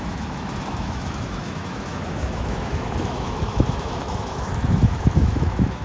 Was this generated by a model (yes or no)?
yes